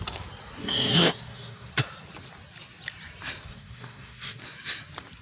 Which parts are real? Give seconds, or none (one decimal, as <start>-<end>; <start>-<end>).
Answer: 0.0-0.6; 1.7-3.5; 4.4-5.2